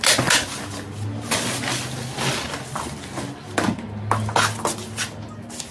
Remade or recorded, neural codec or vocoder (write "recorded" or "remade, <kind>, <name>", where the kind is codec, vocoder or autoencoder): recorded